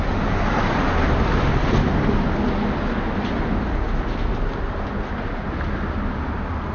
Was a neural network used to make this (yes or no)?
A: no